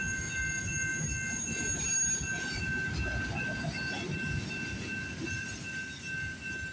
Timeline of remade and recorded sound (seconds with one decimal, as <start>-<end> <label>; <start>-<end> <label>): 0.0-6.7 recorded